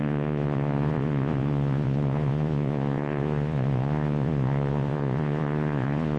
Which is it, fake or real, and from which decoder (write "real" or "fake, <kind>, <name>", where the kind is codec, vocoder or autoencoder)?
fake, vocoder, Vocos